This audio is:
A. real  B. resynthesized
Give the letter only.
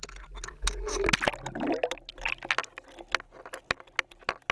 A